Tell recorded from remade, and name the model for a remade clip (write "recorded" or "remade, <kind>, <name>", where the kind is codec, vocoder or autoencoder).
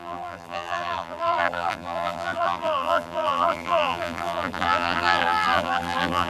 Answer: remade, vocoder, BigVGAN v2